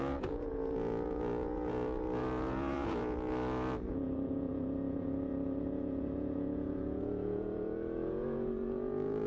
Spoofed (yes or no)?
yes